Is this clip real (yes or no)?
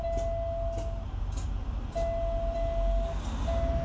yes